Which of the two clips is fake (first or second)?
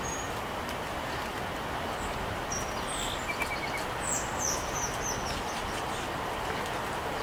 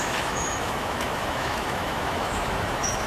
second